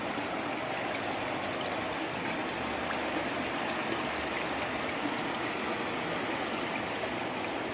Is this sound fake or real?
real